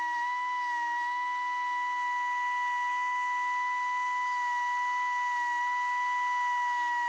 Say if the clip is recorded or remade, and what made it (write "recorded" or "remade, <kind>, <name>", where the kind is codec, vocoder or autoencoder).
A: recorded